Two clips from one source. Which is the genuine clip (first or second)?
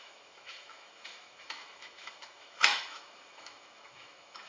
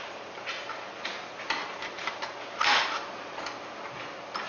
second